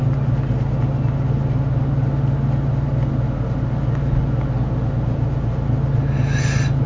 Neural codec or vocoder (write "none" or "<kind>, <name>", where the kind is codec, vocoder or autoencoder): none